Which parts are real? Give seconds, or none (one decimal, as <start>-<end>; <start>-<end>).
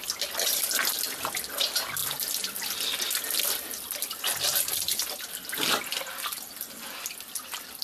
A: 0.0-7.8